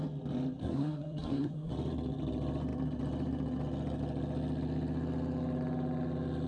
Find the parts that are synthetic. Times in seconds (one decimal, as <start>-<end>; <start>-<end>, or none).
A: 0.6-1.7